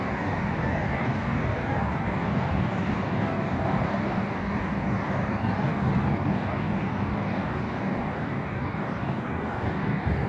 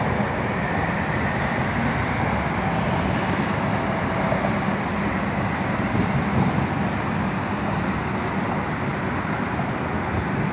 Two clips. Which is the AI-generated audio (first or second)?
first